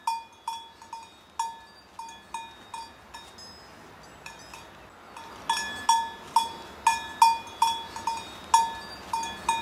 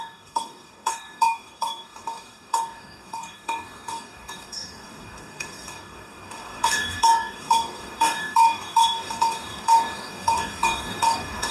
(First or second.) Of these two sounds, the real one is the first